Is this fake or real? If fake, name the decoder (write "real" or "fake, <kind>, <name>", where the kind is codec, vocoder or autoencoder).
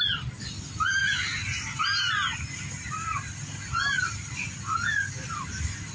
real